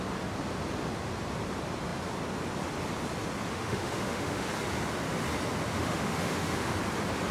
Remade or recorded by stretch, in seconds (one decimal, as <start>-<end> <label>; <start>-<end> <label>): 0.0-3.5 recorded; 3.5-4.5 remade; 4.5-5.7 recorded; 5.7-6.8 remade; 6.8-7.3 recorded